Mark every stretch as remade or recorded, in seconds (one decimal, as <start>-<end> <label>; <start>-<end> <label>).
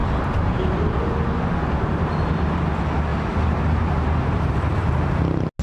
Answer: 0.0-1.0 remade; 1.0-3.1 recorded; 3.1-4.5 remade; 4.5-5.6 recorded